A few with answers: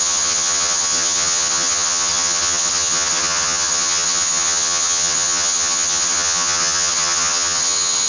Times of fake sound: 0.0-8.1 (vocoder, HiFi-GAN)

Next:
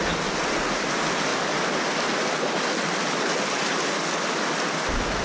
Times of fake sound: none

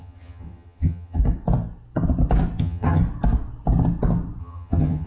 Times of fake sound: 0.0-1.2 (vocoder, HiFi-GAN); 2.6-3.0; 4.4-5.1

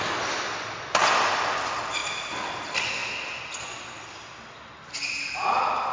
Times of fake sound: none

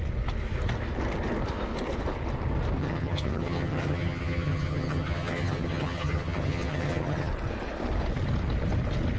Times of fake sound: 2.8-7.3 (vocoder, HiFi-GAN)